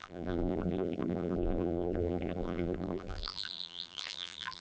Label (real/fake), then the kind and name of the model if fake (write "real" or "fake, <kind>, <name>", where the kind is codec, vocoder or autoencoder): fake, vocoder, BigVGAN v2